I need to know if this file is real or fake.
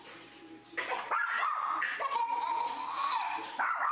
real